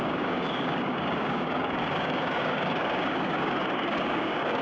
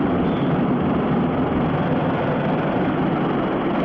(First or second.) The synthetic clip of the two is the first